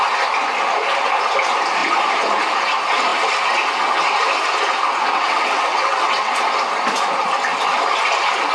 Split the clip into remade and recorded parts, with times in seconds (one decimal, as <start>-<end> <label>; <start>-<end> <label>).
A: 0.0-5.1 recorded; 5.1-6.3 remade; 6.3-8.5 recorded